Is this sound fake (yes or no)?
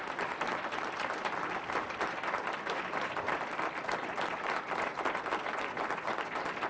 no